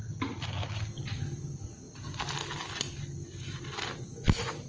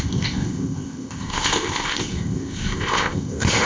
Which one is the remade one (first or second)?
second